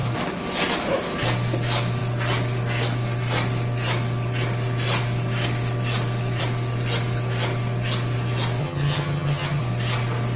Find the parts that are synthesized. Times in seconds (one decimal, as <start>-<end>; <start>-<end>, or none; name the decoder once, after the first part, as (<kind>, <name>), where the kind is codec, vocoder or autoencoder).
8.6-9.6 (vocoder, HiFi-GAN)

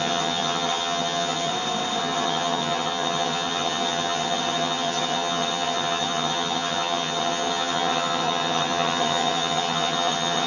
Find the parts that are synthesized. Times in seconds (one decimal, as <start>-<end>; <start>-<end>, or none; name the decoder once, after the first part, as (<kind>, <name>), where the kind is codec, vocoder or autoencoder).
0.0-1.5 (vocoder, HiFi-GAN); 2.0-10.5

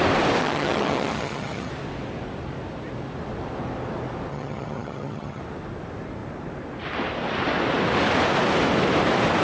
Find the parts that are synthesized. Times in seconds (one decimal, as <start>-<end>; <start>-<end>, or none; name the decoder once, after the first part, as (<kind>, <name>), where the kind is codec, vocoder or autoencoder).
0.4-1.7 (vocoder, HiFi-GAN); 4.3-5.4

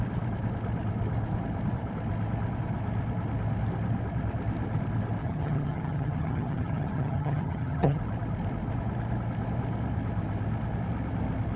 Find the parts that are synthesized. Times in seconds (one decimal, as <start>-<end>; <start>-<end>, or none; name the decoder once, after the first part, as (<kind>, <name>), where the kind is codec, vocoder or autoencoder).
5.2-8.0 (vocoder, HiFi-GAN)